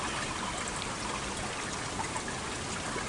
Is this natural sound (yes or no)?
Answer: yes